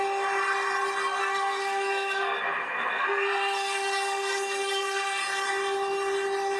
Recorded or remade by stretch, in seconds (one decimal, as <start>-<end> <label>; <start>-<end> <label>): 0.0-1.2 recorded; 1.2-5.2 remade; 5.2-6.6 recorded